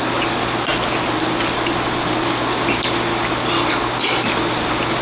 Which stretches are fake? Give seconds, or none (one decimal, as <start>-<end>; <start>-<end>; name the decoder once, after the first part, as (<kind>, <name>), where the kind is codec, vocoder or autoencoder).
none